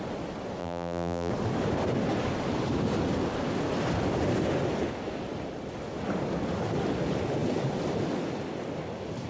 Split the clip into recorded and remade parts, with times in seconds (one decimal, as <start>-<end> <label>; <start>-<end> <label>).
0.0-0.6 recorded; 0.6-1.3 remade; 1.3-9.3 recorded